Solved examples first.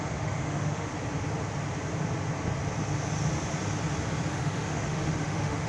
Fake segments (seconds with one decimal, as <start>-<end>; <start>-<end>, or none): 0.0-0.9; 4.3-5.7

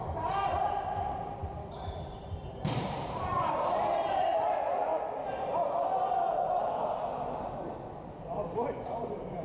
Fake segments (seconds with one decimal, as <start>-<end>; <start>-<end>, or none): 0.0-4.9; 8.1-9.4

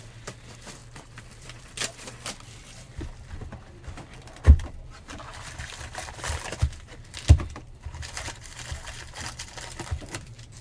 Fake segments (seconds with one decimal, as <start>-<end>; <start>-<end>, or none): 0.0-10.6

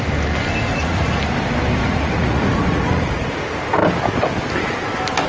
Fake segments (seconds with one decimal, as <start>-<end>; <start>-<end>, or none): 0.7-1.2; 1.8-3.3